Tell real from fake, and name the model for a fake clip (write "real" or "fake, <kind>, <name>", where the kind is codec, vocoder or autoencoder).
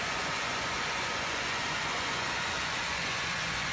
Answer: fake, vocoder, Vocos